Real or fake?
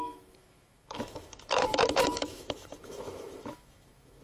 fake